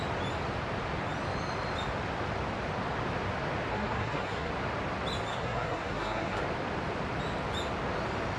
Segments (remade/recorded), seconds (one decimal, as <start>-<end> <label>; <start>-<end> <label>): 0.0-3.7 recorded; 3.7-4.5 remade; 4.5-5.3 recorded; 5.3-6.4 remade; 6.4-8.4 recorded